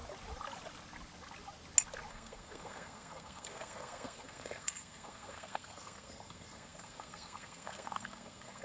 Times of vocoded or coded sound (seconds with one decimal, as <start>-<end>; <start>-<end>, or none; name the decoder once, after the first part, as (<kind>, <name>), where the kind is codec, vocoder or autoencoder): 2.1-8.6 (codec, SNAC)